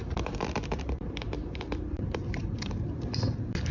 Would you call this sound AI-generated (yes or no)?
yes